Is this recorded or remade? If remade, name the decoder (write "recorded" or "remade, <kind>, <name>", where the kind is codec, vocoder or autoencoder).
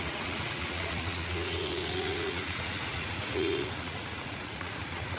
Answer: remade, vocoder, Vocos